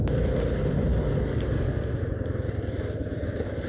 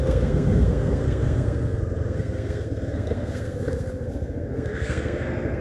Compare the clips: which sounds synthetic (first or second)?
second